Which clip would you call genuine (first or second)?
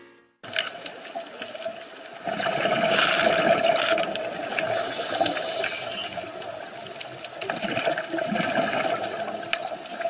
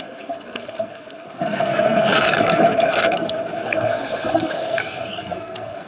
first